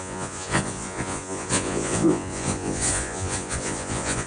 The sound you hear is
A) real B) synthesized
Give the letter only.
B